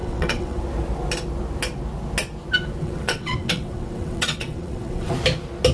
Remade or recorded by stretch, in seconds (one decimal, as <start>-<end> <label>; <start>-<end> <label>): 0.0-0.6 remade; 0.6-2.8 recorded; 2.8-5.1 remade; 5.1-5.7 recorded